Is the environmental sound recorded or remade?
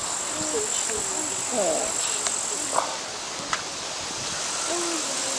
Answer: recorded